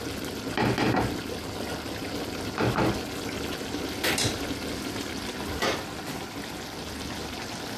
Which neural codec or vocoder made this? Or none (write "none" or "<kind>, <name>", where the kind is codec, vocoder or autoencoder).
none